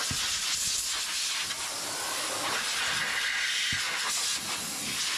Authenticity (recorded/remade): recorded